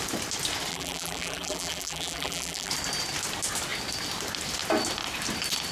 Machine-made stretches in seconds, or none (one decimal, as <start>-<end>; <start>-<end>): 0.7-2.7